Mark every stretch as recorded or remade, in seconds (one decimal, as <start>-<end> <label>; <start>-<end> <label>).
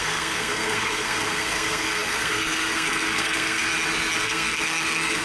0.0-3.7 remade; 3.7-4.2 recorded; 4.2-5.2 remade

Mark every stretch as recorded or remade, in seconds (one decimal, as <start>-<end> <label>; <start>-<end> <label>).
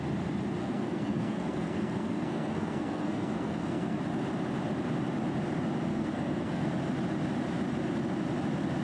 0.0-0.6 recorded; 0.6-4.0 remade; 4.0-5.9 recorded; 5.9-6.7 remade; 6.7-8.8 recorded